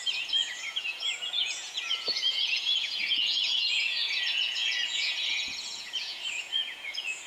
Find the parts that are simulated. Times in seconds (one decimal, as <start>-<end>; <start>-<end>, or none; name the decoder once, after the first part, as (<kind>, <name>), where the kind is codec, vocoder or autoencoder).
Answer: 0.0-7.3 (vocoder, Vocos)